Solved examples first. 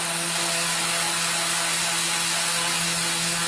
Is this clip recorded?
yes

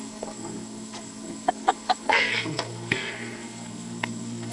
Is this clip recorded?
no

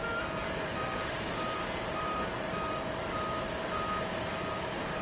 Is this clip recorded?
yes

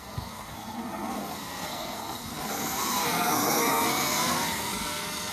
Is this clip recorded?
no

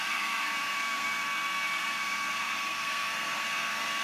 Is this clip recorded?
no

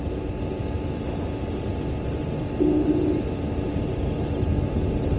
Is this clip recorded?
yes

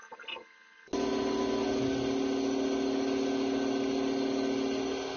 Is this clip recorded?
yes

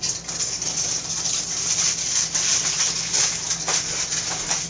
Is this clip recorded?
yes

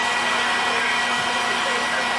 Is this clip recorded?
yes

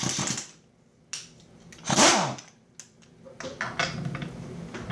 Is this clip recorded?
yes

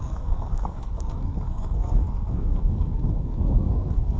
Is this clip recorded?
no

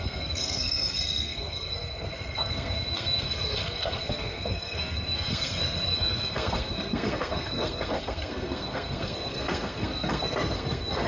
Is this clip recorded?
no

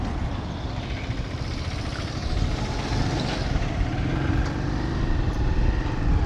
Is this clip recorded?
yes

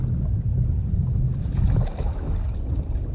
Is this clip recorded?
yes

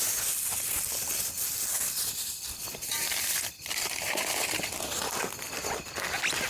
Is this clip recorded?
yes